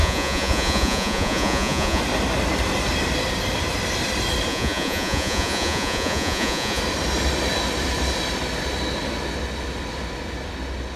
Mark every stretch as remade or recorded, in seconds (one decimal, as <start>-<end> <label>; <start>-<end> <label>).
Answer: 0.0-2.0 remade; 2.0-4.5 recorded; 4.5-6.8 remade; 6.8-11.0 recorded